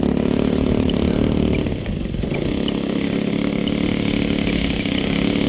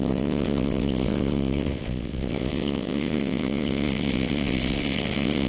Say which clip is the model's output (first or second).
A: second